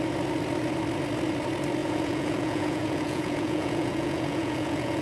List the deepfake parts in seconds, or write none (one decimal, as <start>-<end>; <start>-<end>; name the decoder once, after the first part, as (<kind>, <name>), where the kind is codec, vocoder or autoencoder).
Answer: 1.8-5.0 (vocoder, Vocos)